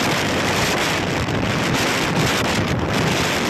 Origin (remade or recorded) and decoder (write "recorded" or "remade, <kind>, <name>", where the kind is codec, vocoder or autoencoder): remade, vocoder, BigVGAN v2